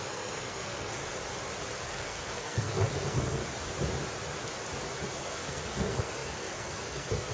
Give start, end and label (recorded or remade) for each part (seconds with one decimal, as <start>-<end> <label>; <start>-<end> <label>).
0.0-1.0 remade; 1.0-1.7 recorded; 1.7-3.4 remade; 3.4-5.1 recorded; 5.1-7.3 remade